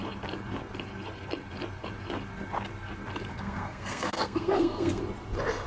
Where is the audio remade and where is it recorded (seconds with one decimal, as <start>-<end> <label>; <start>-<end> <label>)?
0.0-3.3 recorded; 3.3-5.0 remade; 5.0-5.7 recorded